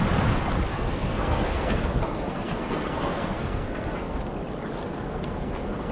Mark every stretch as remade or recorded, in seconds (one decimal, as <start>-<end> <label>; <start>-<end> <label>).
0.0-0.7 recorded; 0.7-4.2 remade; 4.2-4.8 recorded; 4.8-5.9 remade

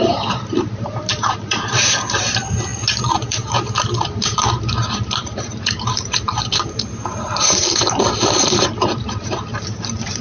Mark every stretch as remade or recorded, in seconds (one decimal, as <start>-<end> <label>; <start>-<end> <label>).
0.0-10.2 remade

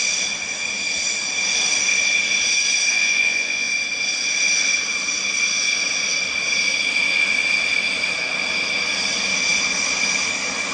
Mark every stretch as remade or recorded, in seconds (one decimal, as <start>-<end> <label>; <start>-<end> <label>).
0.0-2.9 recorded; 2.9-3.7 remade; 3.7-10.7 recorded

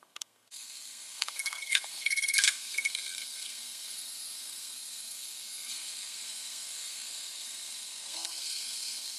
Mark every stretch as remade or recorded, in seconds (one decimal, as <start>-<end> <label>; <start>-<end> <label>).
0.0-9.2 remade